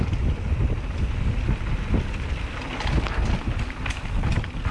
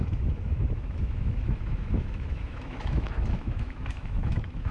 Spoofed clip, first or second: second